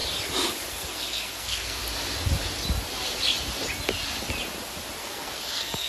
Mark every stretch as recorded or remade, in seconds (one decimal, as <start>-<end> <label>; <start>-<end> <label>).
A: 0.0-0.7 recorded; 0.7-1.8 remade; 1.8-5.0 recorded; 5.0-5.9 remade